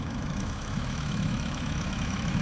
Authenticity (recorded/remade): remade